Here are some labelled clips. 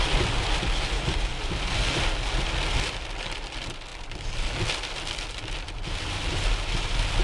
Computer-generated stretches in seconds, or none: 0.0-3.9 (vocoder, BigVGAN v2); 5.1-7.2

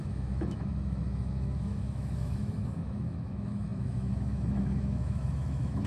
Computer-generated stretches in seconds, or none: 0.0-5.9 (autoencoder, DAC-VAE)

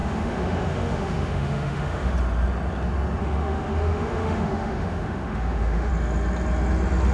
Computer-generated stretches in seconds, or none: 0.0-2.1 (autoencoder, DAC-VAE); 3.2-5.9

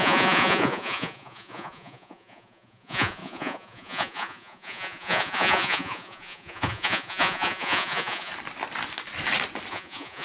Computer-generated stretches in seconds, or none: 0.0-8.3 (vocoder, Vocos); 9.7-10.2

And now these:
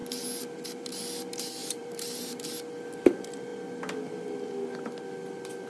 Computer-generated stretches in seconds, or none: 1.6-2.4 (vocoder, BigVGAN v2)

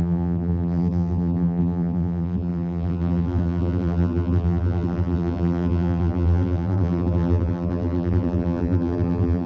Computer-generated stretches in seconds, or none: 0.0-9.5 (vocoder, BigVGAN v2)